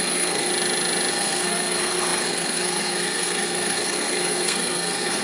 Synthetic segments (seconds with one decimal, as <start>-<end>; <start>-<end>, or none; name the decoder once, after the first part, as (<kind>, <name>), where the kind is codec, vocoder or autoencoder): 0.0-0.5 (codec, SNAC); 1.1-5.2